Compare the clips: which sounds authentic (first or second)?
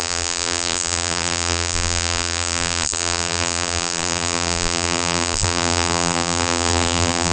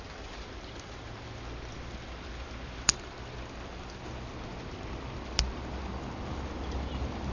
second